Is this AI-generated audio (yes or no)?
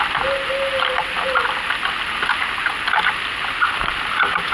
no